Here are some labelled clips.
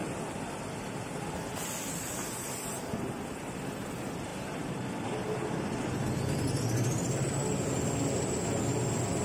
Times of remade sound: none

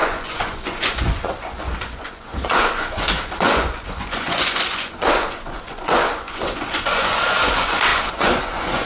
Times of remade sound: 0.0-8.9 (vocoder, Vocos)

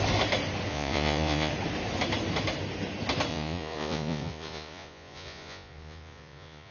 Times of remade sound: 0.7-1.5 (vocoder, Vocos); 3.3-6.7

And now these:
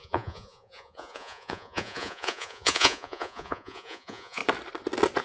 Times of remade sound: 0.0-4.4 (vocoder, Vocos)

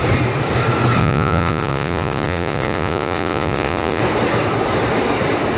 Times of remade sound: 1.0-4.0 (vocoder, Vocos)